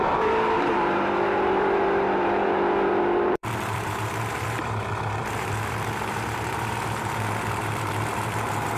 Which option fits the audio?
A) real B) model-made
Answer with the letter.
B